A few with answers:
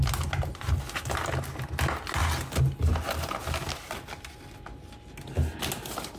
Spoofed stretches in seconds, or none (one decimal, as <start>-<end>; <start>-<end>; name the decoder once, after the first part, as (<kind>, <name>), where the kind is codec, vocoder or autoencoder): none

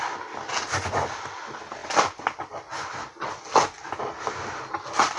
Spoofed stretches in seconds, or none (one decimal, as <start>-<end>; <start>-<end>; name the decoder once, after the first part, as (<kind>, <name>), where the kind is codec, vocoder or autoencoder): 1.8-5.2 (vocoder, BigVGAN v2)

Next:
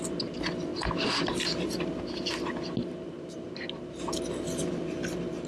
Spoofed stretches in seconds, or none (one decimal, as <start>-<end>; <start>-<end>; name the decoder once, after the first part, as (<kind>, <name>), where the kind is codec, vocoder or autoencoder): none

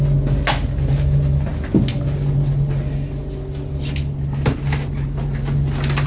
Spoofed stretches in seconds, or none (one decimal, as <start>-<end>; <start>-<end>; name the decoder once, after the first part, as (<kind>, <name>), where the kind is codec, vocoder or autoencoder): none

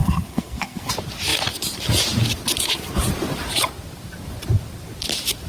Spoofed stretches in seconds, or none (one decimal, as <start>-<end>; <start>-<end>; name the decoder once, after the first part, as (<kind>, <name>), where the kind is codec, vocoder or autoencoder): 0.0-0.9 (codec, SNAC)